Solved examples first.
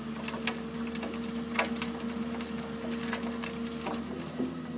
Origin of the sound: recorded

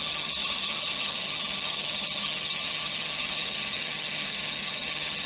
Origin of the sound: remade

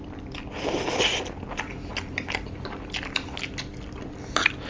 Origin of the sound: recorded